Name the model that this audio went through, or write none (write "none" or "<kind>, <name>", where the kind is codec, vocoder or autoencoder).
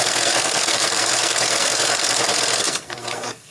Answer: codec, SNAC